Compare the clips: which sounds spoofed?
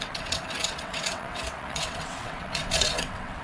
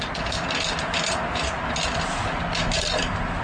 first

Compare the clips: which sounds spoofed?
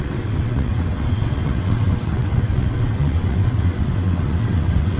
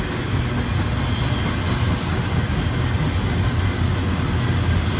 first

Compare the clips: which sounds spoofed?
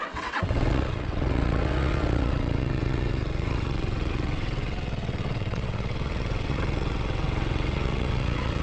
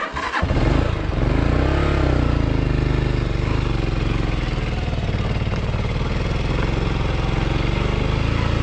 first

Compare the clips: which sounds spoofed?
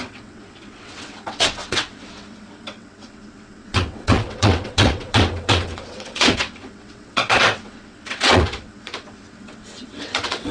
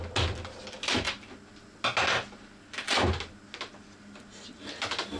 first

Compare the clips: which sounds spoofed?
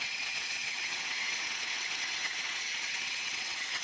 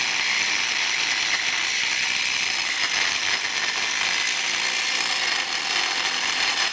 first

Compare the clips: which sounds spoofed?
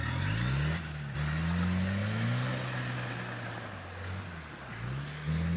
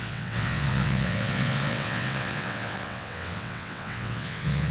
second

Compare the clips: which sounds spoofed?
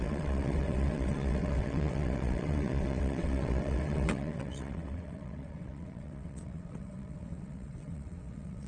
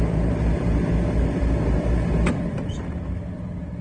first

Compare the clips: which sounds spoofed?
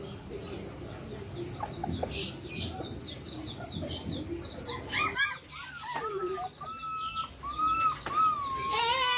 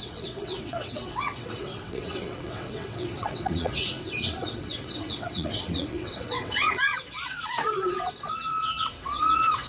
second